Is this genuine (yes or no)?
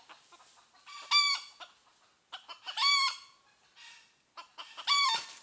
yes